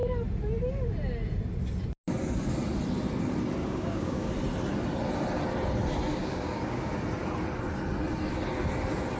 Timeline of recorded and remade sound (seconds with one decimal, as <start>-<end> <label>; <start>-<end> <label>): 0.0-3.6 recorded; 3.6-4.3 remade; 4.3-6.1 recorded; 6.1-6.9 remade; 6.9-9.2 recorded